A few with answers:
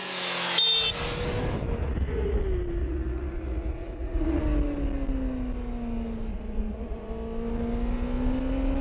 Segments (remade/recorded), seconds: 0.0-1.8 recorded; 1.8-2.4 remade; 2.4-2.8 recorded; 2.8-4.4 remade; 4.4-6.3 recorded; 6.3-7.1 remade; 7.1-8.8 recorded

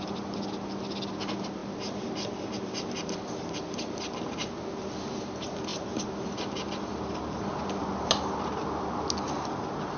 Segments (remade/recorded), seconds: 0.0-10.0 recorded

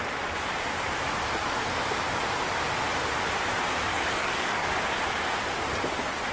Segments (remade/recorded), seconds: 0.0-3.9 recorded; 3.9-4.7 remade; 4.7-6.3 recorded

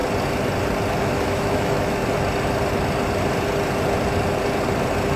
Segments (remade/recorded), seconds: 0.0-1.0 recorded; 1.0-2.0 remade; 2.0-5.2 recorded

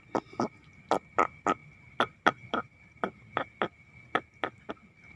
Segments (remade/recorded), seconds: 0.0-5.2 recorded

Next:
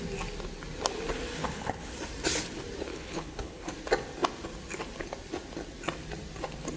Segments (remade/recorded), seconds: 0.0-1.4 recorded; 1.4-1.9 remade; 1.9-2.9 recorded; 2.9-3.7 remade; 3.7-6.8 recorded